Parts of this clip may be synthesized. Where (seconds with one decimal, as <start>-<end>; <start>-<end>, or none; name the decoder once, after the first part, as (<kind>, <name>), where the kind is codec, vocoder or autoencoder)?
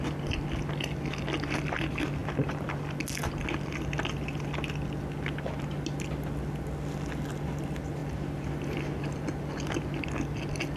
none